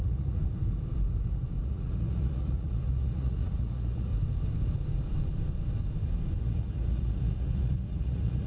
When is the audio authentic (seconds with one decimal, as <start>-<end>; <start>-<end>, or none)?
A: 0.4-1.6; 4.1-6.4